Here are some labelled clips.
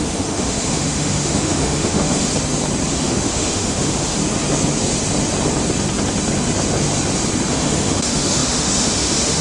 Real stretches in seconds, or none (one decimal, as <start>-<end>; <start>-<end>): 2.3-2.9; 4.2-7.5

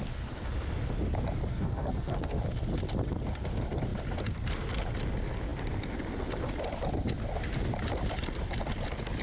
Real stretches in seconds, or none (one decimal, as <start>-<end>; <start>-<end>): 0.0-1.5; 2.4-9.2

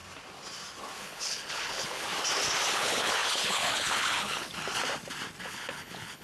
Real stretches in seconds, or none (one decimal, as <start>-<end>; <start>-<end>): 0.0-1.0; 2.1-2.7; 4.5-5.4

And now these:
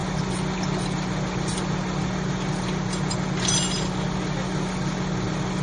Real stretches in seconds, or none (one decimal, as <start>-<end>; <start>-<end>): 0.0-5.6